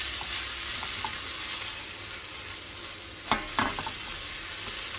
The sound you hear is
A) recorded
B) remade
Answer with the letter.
A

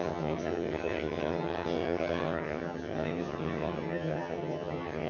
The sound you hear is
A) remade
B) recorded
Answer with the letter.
A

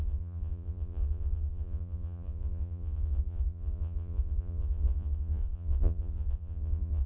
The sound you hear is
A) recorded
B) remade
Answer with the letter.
B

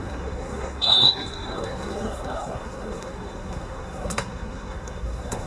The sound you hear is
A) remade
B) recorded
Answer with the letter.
A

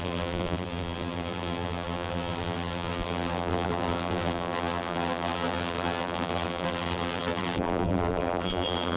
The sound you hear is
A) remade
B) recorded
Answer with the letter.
A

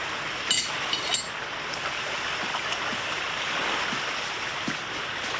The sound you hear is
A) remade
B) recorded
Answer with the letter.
B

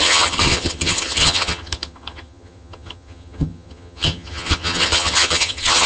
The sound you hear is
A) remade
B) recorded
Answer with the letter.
A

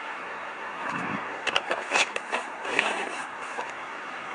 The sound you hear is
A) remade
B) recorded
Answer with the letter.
A